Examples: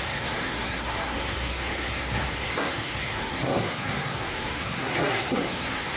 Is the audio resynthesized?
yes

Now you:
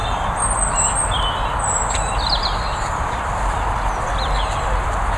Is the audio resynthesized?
no